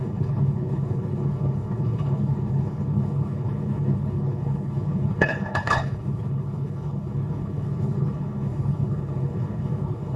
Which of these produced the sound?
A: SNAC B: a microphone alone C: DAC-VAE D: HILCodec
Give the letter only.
D